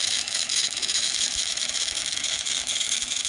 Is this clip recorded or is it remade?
remade